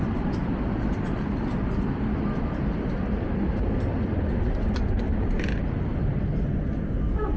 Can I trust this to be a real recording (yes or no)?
yes